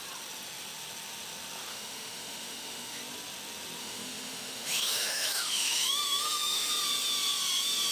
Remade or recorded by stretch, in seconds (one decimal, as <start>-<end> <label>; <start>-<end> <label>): 0.0-1.7 recorded; 1.7-3.0 remade; 3.0-3.8 recorded; 3.8-6.7 remade; 6.7-7.9 recorded